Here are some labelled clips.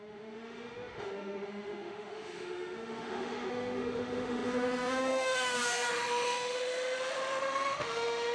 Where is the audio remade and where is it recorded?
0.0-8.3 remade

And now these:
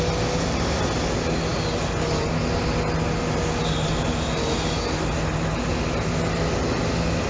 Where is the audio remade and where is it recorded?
0.0-7.3 recorded

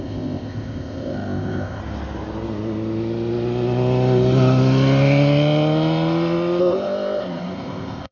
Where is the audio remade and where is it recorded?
0.0-1.8 remade; 1.8-6.6 recorded; 6.6-8.1 remade

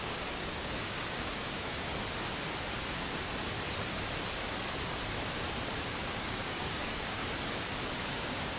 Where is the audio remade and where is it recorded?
0.0-1.9 remade; 1.9-6.1 recorded; 6.1-7.2 remade; 7.2-8.0 recorded; 8.0-8.6 remade

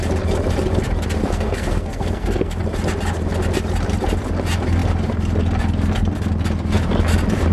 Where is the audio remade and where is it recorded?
0.0-1.2 recorded; 1.2-2.6 remade; 2.6-7.5 recorded

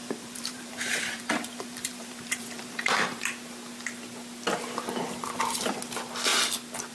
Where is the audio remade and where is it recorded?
0.0-3.2 remade; 3.2-6.9 recorded